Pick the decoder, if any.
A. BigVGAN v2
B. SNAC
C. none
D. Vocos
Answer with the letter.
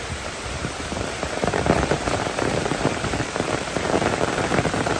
A